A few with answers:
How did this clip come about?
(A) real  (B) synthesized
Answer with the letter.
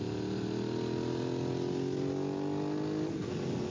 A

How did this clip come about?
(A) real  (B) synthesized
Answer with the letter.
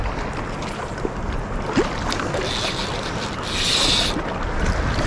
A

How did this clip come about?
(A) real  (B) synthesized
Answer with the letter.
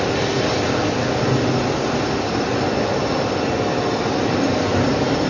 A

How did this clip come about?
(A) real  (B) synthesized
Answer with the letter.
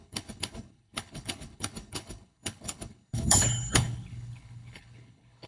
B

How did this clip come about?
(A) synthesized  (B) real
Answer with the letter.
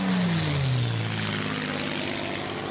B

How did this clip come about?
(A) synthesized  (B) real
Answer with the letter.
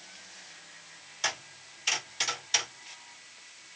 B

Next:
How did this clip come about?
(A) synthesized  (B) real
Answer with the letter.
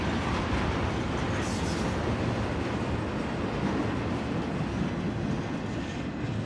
B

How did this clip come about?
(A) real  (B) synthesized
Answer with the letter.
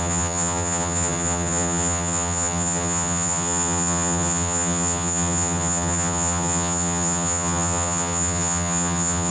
B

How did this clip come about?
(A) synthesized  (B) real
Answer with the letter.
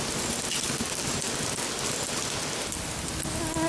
B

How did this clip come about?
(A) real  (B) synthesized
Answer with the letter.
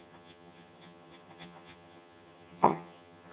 B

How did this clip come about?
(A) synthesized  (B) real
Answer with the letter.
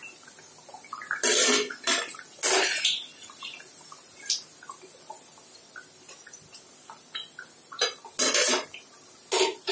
B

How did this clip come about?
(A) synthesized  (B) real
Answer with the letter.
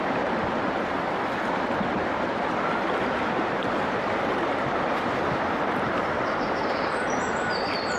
B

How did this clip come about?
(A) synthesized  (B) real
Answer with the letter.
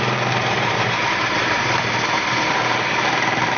A